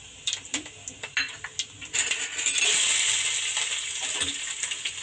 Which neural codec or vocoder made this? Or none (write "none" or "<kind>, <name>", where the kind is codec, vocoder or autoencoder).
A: none